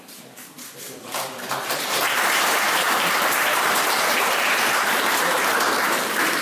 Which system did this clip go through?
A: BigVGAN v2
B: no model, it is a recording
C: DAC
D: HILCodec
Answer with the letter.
A